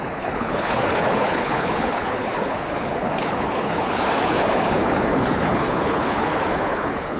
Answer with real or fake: fake